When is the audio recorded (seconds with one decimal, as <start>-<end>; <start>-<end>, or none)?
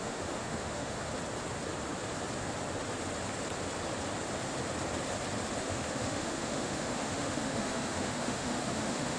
1.1-5.6